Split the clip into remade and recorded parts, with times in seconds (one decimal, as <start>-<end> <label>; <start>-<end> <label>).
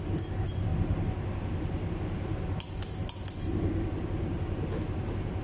0.0-5.4 recorded